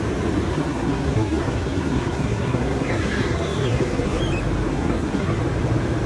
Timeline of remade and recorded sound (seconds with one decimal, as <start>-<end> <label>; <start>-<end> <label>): 0.0-0.5 recorded; 0.5-4.2 remade; 4.2-4.7 recorded; 4.7-5.4 remade; 5.4-6.1 recorded